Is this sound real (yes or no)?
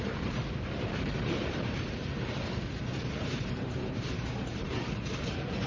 no